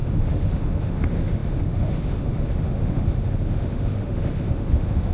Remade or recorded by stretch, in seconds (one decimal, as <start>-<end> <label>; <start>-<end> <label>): 0.0-5.1 remade